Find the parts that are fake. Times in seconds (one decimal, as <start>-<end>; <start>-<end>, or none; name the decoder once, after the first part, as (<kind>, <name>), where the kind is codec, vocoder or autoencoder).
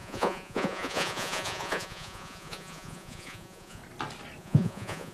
0.0-3.8 (vocoder, Vocos); 4.4-5.1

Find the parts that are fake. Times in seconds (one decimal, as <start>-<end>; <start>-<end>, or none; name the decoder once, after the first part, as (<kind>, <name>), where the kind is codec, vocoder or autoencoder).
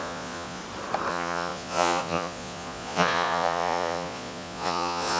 0.0-0.6 (vocoder, Vocos); 1.1-5.2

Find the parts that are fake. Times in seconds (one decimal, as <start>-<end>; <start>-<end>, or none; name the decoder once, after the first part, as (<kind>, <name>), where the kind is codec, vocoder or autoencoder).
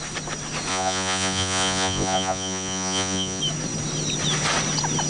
0.7-3.4 (vocoder, Vocos)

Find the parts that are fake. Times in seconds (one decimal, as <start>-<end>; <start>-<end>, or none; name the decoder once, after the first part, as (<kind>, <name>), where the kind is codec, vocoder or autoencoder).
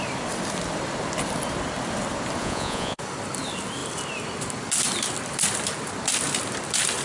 2.4-3.0 (vocoder, Vocos)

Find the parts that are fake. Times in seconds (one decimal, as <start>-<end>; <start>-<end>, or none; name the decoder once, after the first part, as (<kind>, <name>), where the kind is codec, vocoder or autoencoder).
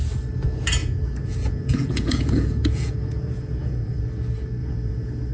0.8-4.0 (vocoder, Vocos); 4.6-5.3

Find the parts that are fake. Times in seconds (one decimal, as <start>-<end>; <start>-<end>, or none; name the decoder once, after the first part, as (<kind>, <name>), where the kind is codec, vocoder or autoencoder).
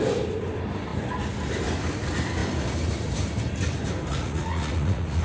4.1-5.2 (vocoder, Vocos)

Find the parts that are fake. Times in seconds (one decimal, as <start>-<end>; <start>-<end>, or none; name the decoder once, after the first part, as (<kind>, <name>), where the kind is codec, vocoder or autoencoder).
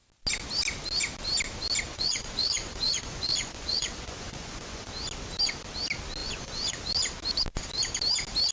1.9-4.9 (vocoder, Vocos); 6.2-6.8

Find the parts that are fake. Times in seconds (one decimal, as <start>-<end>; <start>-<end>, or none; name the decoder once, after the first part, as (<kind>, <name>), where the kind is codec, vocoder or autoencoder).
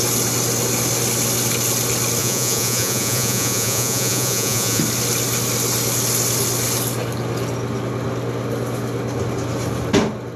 2.2-4.8 (vocoder, Vocos)